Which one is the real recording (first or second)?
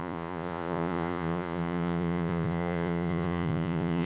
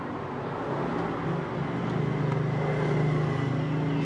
second